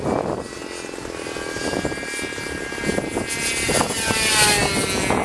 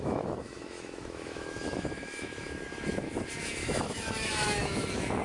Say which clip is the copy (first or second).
second